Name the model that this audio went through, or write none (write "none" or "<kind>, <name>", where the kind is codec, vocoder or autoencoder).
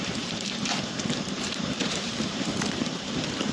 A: vocoder, BigVGAN v2